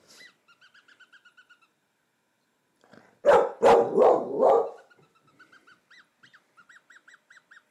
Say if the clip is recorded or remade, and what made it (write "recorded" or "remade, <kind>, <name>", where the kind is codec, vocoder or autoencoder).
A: recorded